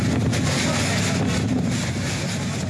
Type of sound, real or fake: real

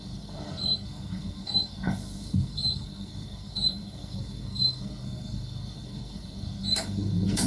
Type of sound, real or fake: fake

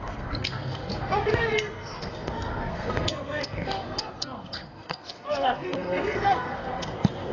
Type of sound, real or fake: fake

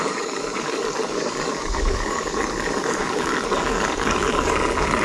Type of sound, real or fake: fake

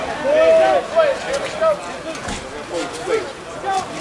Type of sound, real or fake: real